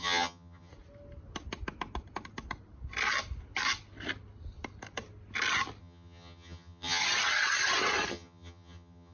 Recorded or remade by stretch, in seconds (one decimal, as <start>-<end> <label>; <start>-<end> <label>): 0.0-0.7 remade; 0.7-5.8 recorded; 5.8-7.0 remade; 7.0-8.1 recorded; 8.1-9.1 remade